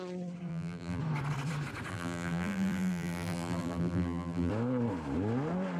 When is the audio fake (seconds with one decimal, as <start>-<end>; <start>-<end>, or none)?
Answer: 0.5-1.0; 1.9-4.5